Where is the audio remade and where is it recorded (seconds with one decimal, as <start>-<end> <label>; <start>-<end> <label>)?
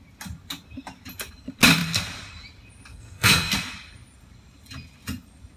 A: 0.0-2.9 recorded; 2.9-3.5 remade; 3.5-5.6 recorded